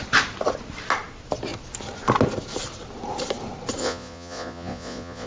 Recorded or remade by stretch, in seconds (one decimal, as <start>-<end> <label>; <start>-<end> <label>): 0.0-3.8 recorded; 3.8-5.3 remade

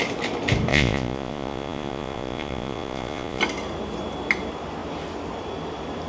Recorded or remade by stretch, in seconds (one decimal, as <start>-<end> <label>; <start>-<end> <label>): 0.0-0.7 recorded; 0.7-3.4 remade; 3.4-6.1 recorded

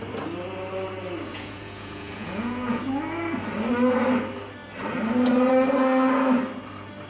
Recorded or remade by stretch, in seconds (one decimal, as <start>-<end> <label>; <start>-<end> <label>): 0.0-1.3 recorded; 1.3-2.8 remade; 2.8-7.1 recorded

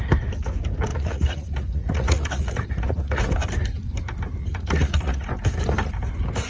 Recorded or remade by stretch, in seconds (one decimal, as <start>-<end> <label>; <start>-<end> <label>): 0.0-0.9 recorded; 0.9-3.2 remade; 3.2-4.4 recorded; 4.4-5.3 remade; 5.3-6.5 recorded